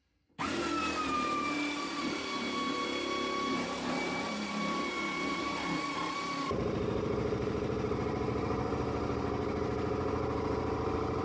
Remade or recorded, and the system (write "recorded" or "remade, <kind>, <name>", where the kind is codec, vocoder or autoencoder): remade, vocoder, BigVGAN v2